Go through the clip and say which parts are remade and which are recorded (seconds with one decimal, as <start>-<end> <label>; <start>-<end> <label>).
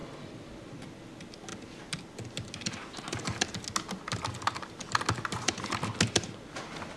0.0-7.0 recorded